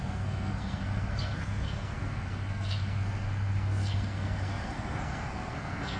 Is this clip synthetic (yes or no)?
yes